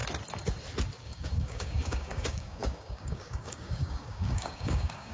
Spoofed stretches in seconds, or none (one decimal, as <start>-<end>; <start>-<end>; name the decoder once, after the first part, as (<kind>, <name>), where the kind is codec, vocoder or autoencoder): 1.0-5.1 (codec, DAC)